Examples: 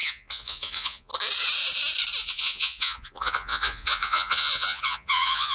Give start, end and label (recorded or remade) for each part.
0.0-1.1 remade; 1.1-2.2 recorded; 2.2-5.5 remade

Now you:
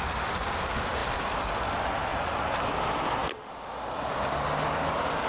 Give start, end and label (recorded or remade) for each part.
0.0-2.1 recorded; 2.1-2.6 remade; 2.6-5.3 recorded

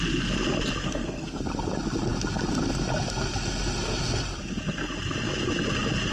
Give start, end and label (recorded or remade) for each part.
0.0-0.8 recorded; 0.8-1.4 remade; 1.4-6.1 recorded

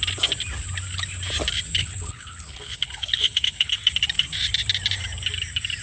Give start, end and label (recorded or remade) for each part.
0.0-1.7 recorded; 1.7-3.7 remade; 3.7-5.8 recorded

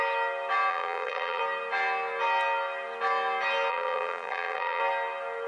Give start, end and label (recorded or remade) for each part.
0.0-0.7 recorded; 0.7-1.4 remade; 1.4-3.7 recorded; 3.7-4.8 remade; 4.8-5.5 recorded

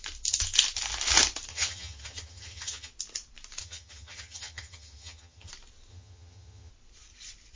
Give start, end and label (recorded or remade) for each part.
0.0-1.5 recorded; 1.5-2.9 remade; 2.9-3.6 recorded; 3.6-5.5 remade; 5.5-5.9 recorded; 5.9-6.7 remade; 6.7-7.6 recorded

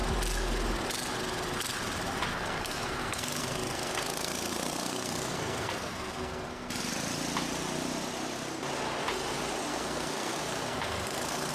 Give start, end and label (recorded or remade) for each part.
0.0-2.3 recorded; 2.3-6.7 remade; 6.7-9.7 recorded; 9.7-11.5 remade

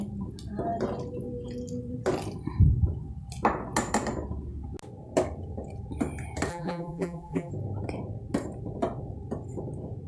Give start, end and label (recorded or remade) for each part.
0.0-6.5 recorded; 6.5-7.5 remade; 7.5-10.1 recorded